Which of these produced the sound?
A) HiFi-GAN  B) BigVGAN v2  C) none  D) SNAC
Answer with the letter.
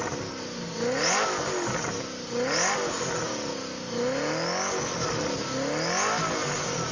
C